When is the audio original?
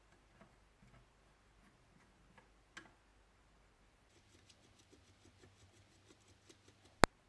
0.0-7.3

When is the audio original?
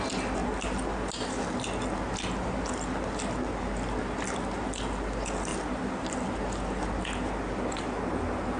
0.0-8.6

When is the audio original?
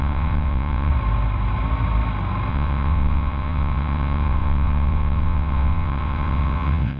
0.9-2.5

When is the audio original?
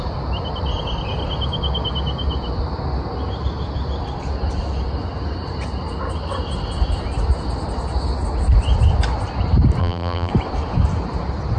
0.0-9.8; 10.3-11.6